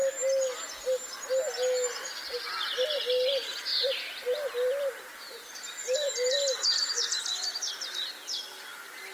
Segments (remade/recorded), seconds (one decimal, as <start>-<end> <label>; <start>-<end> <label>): 0.0-3.7 recorded; 3.7-7.2 remade; 7.2-9.1 recorded